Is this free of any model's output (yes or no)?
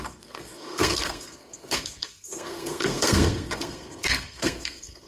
no